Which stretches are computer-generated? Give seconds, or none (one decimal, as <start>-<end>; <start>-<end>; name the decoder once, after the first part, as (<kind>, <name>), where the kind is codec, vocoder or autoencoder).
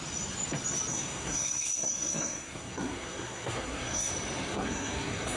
0.9-4.1 (codec, SNAC); 4.5-5.4